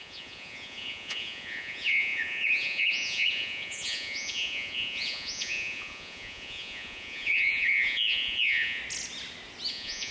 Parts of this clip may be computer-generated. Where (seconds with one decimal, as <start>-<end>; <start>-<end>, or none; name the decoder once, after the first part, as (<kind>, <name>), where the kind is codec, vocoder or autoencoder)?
0.0-8.8 (vocoder, Vocos); 9.7-10.1